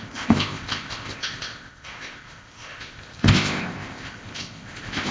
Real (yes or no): no